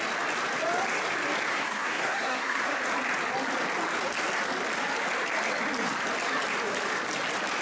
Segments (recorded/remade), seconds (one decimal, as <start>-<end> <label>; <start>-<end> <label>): 0.0-1.5 recorded; 1.5-2.8 remade; 2.8-7.6 recorded